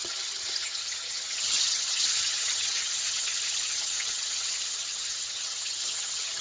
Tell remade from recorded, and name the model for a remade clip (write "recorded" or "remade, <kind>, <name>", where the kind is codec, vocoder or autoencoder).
remade, vocoder, HiFi-GAN